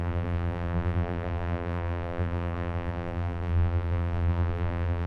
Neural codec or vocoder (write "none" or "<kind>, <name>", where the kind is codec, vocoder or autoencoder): vocoder, BigVGAN v2